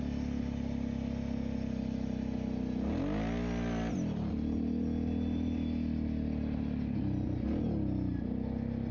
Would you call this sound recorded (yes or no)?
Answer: yes